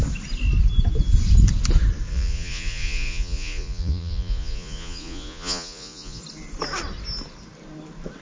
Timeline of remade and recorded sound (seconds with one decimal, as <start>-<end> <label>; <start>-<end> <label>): 0.0-2.1 recorded; 2.1-6.2 remade; 6.2-8.2 recorded